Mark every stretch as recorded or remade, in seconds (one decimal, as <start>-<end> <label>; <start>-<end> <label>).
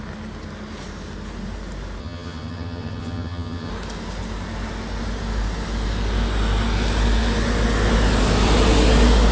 0.0-2.0 recorded; 2.0-3.7 remade; 3.7-9.3 recorded